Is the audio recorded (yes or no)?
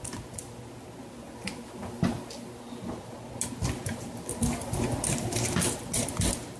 yes